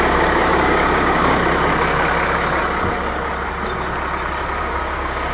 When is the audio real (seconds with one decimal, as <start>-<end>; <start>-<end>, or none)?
1.4-4.6